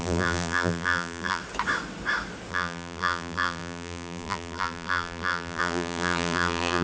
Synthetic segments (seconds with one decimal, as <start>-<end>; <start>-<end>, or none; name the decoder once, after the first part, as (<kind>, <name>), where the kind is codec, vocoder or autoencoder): 0.0-1.4 (vocoder, BigVGAN v2); 2.5-6.8